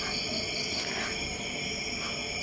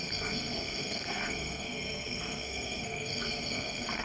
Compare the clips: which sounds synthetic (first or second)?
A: second